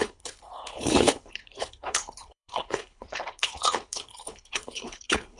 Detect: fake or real fake